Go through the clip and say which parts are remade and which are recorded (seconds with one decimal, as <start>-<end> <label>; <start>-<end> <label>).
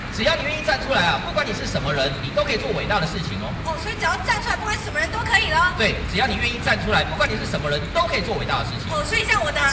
0.0-9.7 recorded